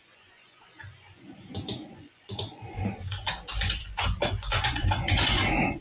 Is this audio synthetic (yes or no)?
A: yes